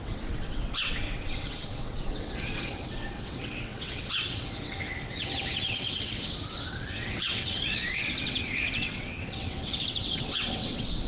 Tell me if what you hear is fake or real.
fake